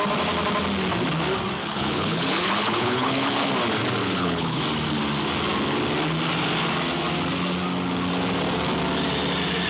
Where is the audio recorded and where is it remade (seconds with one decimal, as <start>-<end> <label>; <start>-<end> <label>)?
0.0-1.6 recorded; 1.6-3.5 remade; 3.5-4.0 recorded; 4.0-4.6 remade; 4.6-9.7 recorded